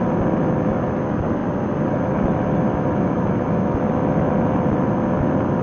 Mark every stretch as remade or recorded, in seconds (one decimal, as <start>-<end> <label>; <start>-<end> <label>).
0.0-5.6 recorded

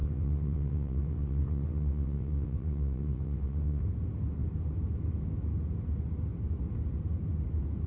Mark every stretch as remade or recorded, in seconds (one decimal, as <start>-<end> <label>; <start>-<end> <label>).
0.0-3.8 remade; 3.8-7.9 recorded

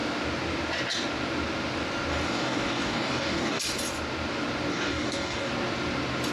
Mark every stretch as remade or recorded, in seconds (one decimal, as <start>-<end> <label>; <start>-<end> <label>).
0.0-2.1 recorded; 2.1-3.6 remade; 3.6-4.7 recorded; 4.7-5.5 remade; 5.5-6.3 recorded

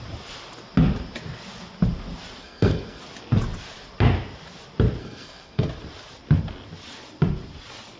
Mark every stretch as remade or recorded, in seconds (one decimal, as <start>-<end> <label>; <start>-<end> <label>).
0.0-2.4 recorded; 2.4-3.0 remade; 3.0-5.0 recorded; 5.0-5.7 remade; 5.7-8.0 recorded